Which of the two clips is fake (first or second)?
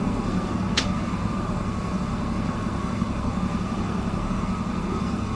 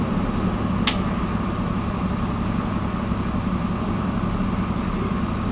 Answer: first